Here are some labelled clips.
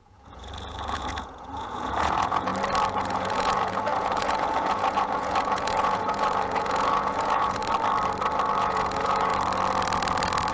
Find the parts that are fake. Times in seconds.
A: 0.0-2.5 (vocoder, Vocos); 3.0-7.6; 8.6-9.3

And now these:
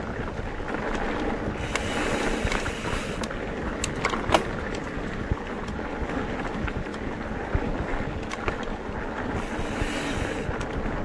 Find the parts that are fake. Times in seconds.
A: none

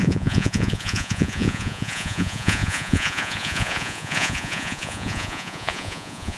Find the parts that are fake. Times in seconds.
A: 0.0-6.4 (vocoder, Vocos)

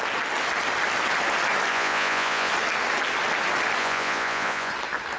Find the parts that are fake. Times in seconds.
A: 1.7-2.5 (vocoder, Vocos); 3.8-4.7

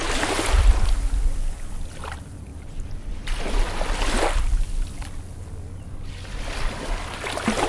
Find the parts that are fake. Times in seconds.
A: none

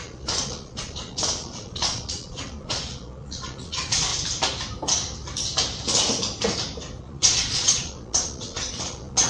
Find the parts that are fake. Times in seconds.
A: 0.0-4.1 (vocoder, Vocos); 7.0-9.3